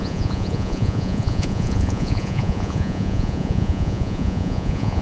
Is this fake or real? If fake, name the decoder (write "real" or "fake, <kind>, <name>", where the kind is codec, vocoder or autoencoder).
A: fake, vocoder, Vocos